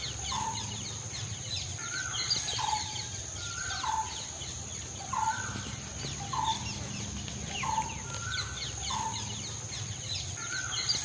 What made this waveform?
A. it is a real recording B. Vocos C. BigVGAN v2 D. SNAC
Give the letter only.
A